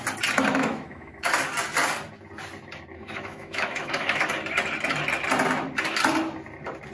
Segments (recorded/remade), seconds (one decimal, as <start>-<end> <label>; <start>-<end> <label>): 0.0-0.5 recorded; 0.5-1.3 remade; 1.3-2.9 recorded; 2.9-4.3 remade; 4.3-6.9 recorded